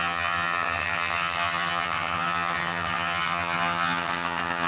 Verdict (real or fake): fake